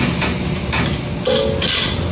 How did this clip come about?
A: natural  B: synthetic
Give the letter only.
A